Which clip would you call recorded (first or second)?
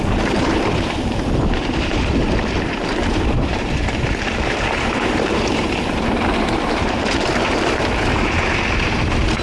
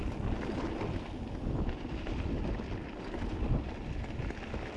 second